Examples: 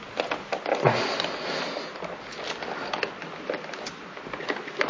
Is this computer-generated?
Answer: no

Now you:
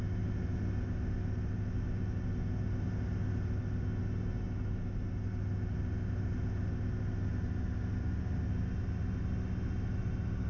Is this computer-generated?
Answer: no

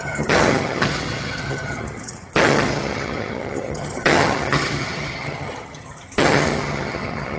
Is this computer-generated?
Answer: yes